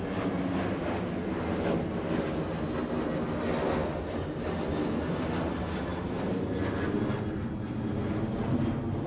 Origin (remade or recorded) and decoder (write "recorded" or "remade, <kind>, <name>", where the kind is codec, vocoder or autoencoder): recorded